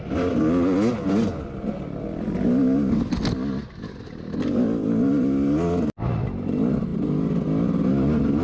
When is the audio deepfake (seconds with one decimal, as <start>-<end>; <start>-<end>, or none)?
none